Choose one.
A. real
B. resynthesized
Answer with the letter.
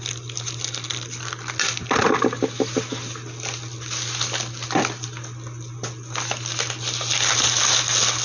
A